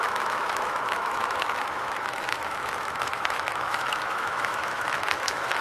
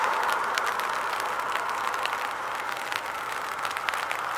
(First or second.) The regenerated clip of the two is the first